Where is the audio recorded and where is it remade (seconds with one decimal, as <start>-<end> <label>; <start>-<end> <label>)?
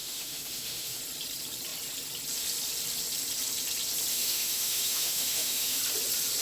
0.0-1.0 remade; 1.0-4.1 recorded; 4.1-5.8 remade; 5.8-6.4 recorded